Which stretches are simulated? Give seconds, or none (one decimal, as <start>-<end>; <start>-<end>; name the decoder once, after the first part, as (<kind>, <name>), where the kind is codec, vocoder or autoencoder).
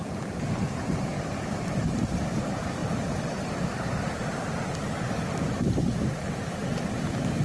1.2-2.8 (vocoder, BigVGAN v2)